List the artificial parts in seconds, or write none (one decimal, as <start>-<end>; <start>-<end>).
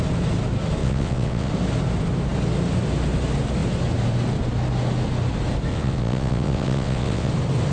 0.8-1.5; 5.7-7.3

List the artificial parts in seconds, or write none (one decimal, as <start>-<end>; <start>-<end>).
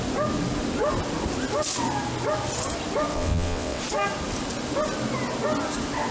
3.1-3.8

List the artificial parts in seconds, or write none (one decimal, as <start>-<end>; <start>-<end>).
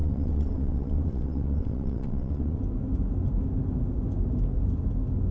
0.0-2.6